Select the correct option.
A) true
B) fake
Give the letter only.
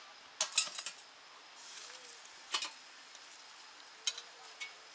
A